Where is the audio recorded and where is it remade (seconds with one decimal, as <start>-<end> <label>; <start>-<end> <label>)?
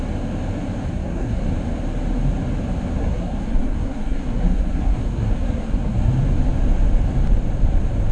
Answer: 0.0-0.9 recorded; 0.9-1.4 remade; 1.4-3.0 recorded; 3.0-6.1 remade; 6.1-8.1 recorded